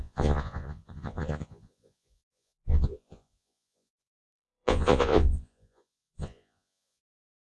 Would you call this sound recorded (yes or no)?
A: no